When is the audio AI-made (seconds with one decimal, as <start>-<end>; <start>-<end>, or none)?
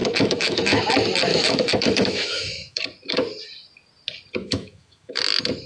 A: 0.0-0.8; 1.3-2.8; 4.4-5.2